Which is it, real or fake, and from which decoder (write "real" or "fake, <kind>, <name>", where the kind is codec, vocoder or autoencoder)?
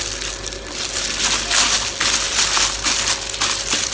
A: real